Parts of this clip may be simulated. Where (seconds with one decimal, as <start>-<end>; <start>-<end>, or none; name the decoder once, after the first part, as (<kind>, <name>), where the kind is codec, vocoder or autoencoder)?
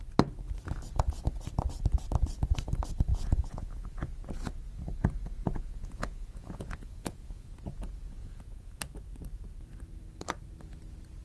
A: 3.1-4.1 (vocoder, Vocos); 5.4-7.5; 8.2-8.8